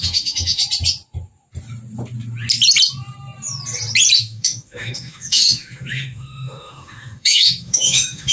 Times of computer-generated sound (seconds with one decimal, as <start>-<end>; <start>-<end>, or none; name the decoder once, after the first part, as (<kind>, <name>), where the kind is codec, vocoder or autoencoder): 0.0-0.6 (autoencoder, DAC-VAE); 4.2-8.3